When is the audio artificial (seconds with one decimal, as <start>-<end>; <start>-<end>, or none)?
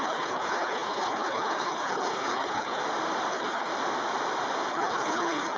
0.0-2.8; 3.3-3.7; 4.7-5.6